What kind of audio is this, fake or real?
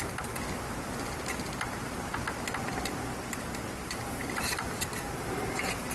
real